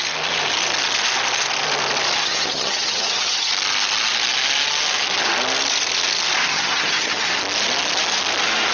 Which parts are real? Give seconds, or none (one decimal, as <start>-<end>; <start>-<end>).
0.0-2.2; 3.5-6.5; 7.3-8.7